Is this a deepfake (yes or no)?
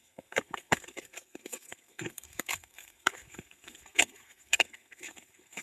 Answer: yes